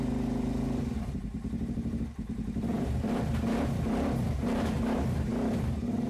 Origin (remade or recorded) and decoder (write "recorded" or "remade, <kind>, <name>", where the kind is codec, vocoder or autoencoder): remade, vocoder, BigVGAN v2